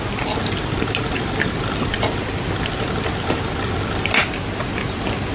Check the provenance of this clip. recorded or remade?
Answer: recorded